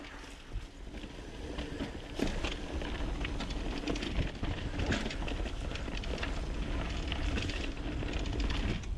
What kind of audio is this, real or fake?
real